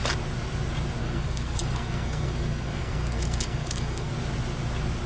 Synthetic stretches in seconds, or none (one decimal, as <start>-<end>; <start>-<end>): 1.0-4.1